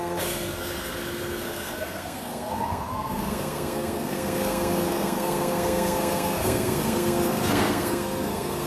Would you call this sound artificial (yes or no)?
yes